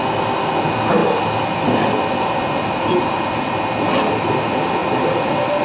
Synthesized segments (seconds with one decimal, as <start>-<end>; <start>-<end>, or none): none

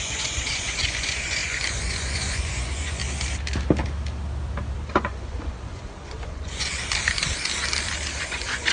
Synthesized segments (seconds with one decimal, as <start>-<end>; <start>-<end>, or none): 0.0-3.0; 5.0-6.8; 8.2-8.7

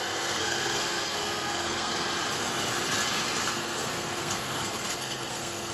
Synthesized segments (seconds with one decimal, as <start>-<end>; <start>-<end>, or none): 0.0-1.9; 3.4-5.7

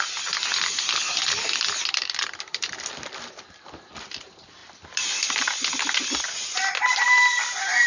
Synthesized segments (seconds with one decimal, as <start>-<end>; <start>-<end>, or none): 0.0-7.9

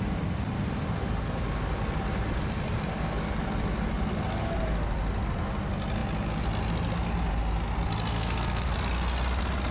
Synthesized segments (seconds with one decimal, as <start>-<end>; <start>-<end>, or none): 8.1-8.7